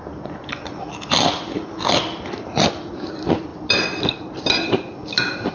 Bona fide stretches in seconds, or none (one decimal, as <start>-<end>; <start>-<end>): 0.0-5.5